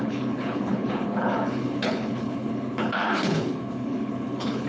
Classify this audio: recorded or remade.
remade